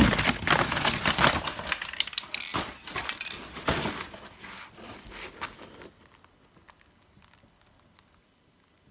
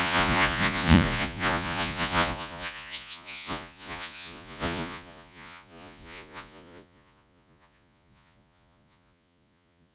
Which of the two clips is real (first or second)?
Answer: first